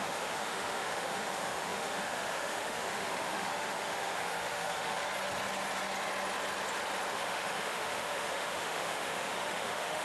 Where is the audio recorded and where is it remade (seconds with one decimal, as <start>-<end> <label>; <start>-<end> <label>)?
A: 0.0-5.0 remade; 5.0-7.1 recorded; 7.1-10.0 remade